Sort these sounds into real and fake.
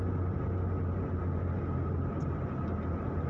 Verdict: real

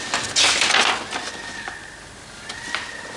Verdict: real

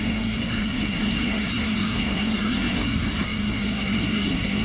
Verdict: fake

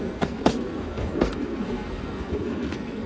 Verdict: fake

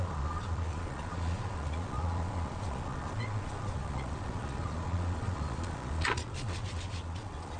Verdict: fake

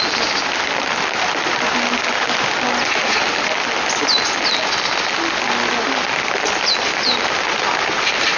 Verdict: real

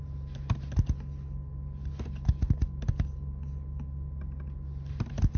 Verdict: real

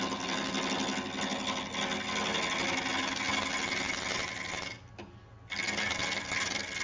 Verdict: real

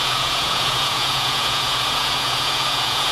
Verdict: fake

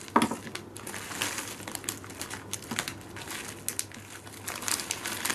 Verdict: real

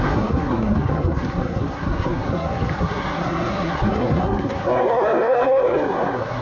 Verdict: fake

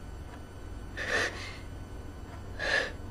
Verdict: real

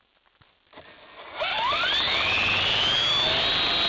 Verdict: fake